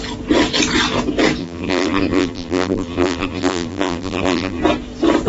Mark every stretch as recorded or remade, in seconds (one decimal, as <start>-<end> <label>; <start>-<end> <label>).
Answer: 0.0-1.4 recorded; 1.4-4.6 remade; 4.6-5.3 recorded